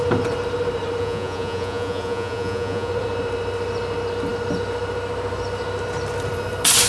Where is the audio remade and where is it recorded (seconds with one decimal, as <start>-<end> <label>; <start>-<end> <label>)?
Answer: 0.0-1.0 recorded; 1.0-2.9 remade; 2.9-6.9 recorded

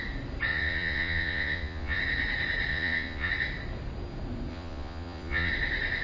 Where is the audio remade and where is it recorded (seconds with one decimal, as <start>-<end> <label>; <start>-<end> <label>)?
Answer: 0.0-0.5 recorded; 0.5-2.0 remade; 2.0-2.7 recorded; 2.7-3.3 remade; 3.3-4.5 recorded; 4.5-5.5 remade; 5.5-6.0 recorded

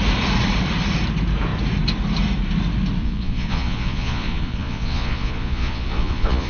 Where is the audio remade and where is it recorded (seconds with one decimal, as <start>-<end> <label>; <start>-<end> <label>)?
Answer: 0.0-3.0 recorded; 3.0-6.5 remade

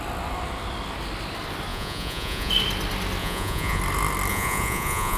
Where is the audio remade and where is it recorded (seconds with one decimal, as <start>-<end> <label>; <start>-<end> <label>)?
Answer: 0.0-1.7 recorded; 1.7-2.5 remade; 2.5-3.2 recorded; 3.2-3.8 remade; 3.8-4.3 recorded; 4.3-5.2 remade

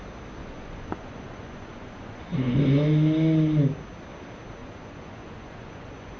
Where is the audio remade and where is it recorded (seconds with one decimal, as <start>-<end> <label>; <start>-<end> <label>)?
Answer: 0.0-0.4 recorded; 0.4-2.6 remade; 2.6-4.6 recorded; 4.6-6.2 remade